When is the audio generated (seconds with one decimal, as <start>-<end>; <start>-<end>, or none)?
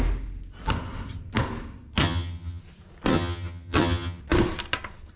2.0-2.6; 3.1-4.2